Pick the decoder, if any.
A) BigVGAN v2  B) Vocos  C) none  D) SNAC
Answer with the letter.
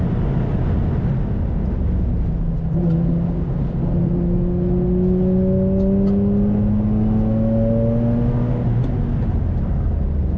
C